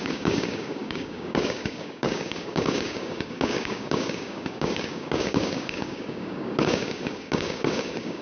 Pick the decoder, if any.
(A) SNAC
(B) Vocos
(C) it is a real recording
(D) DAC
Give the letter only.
D